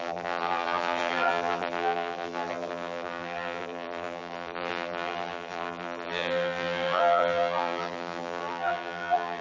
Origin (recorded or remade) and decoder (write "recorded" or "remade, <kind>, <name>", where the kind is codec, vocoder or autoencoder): remade, vocoder, BigVGAN v2